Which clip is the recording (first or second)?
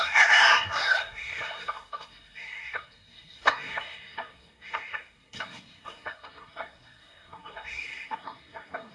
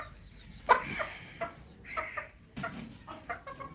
second